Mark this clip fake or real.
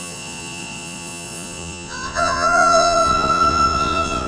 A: fake